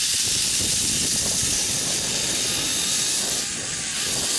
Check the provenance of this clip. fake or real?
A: real